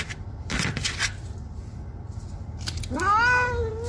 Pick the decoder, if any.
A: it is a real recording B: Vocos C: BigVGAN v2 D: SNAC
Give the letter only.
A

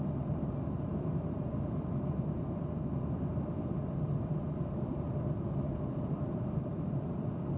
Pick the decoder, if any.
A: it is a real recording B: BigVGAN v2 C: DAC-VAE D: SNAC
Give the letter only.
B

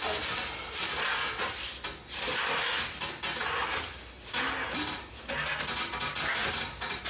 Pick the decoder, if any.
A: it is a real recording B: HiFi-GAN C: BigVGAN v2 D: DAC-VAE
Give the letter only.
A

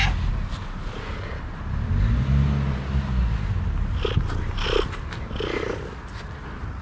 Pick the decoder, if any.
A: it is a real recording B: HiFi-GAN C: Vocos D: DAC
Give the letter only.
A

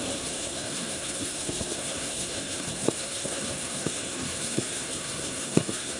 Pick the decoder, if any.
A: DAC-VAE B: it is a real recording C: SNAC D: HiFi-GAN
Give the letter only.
C